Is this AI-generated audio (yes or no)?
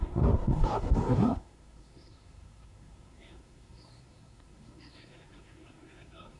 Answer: yes